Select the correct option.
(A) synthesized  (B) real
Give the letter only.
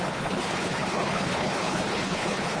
A